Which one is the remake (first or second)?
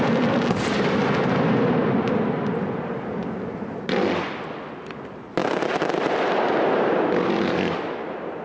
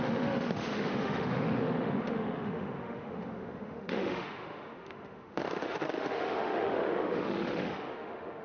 second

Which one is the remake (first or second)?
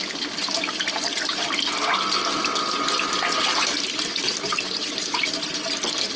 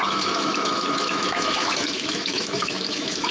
second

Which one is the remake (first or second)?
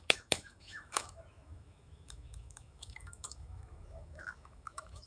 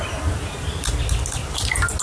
first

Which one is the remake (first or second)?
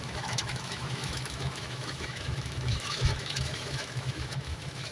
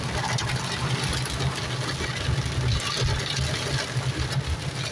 first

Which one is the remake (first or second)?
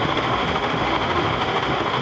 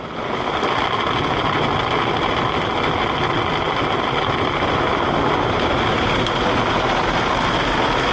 first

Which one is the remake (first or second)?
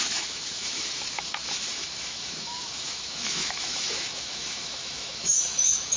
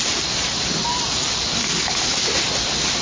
first